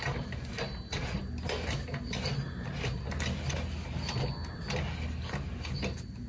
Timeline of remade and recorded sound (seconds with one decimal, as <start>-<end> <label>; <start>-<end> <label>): 0.0-1.2 remade; 1.2-6.3 recorded